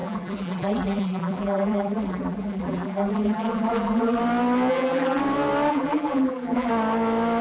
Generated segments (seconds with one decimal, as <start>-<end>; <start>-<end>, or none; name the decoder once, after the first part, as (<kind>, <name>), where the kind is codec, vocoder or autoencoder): 0.0-4.2 (vocoder, BigVGAN v2); 4.7-5.2; 5.7-6.7